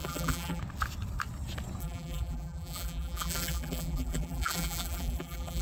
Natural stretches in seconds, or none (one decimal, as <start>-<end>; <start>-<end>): 0.6-1.8